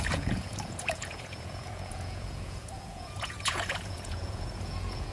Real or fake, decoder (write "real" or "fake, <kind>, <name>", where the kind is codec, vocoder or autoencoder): fake, vocoder, Vocos